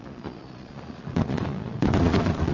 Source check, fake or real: fake